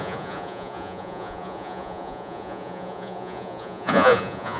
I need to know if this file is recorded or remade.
remade